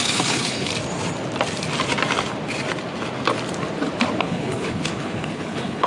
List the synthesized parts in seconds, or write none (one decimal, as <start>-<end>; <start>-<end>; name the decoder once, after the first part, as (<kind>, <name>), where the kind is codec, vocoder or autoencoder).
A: 0.0-0.7 (codec, HILCodec); 4.2-5.9